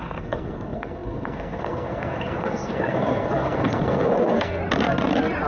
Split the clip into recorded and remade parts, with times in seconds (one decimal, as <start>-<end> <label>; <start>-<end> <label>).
0.0-4.6 remade; 4.6-5.5 recorded